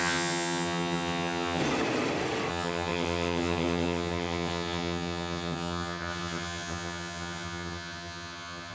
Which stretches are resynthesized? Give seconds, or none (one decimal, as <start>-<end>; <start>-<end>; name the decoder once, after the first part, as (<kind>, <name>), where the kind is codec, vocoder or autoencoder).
0.0-1.6 (vocoder, HiFi-GAN); 2.5-8.7